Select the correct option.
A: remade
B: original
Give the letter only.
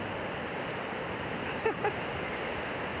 B